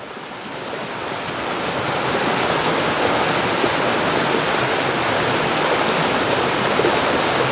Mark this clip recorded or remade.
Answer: recorded